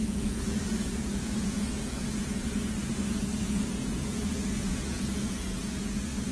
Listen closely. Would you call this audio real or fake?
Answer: fake